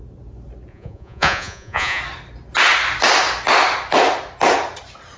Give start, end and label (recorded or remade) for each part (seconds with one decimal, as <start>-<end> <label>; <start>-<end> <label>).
0.0-0.7 recorded; 0.7-2.0 remade; 2.0-5.2 recorded